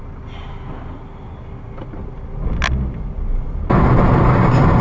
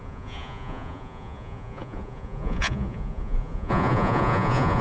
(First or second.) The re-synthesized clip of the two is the second